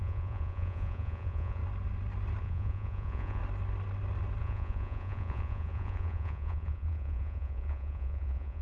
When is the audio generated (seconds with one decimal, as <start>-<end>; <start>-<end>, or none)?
0.0-1.6; 2.4-3.4; 4.4-8.6